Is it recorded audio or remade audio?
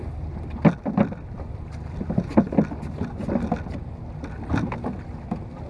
recorded